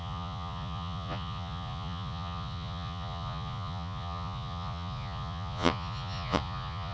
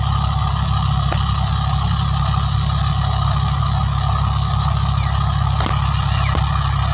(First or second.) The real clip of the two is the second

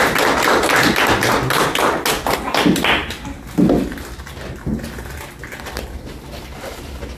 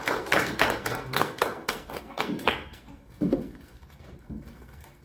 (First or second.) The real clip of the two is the first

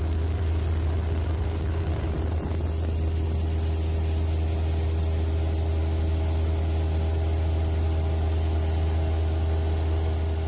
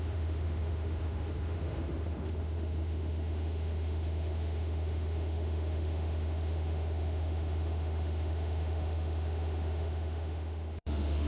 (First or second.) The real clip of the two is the first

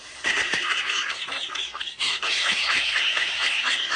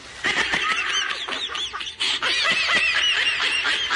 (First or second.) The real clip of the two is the second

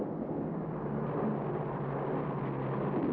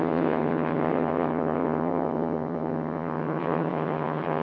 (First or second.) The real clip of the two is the first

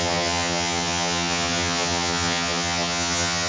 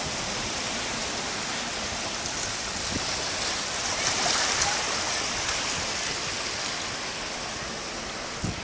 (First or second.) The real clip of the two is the second